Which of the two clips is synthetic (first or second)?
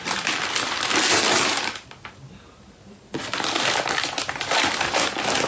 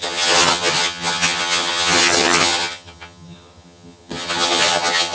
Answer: second